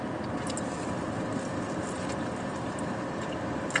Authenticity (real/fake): real